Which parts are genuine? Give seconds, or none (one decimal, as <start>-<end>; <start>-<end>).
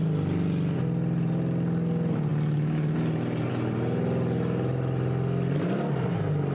0.0-6.5